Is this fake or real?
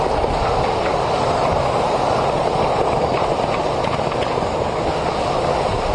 real